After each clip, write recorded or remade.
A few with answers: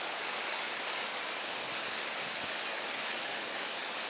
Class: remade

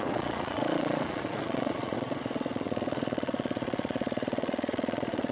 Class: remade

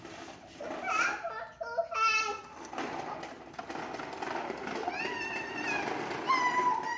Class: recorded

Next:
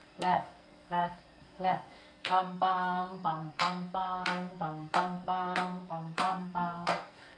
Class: remade